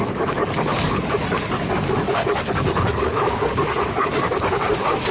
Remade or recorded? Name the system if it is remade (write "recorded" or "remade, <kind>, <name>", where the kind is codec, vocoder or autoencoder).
remade, codec, DAC